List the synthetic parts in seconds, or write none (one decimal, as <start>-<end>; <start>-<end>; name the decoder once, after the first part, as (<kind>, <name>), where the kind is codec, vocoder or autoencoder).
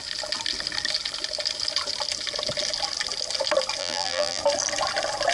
3.8-4.4 (vocoder, BigVGAN v2)